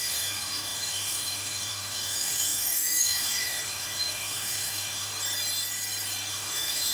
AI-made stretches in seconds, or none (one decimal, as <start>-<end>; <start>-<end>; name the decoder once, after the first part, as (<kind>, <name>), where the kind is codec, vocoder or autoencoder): 0.0-5.1 (autoencoder, DAC-VAE); 6.3-6.9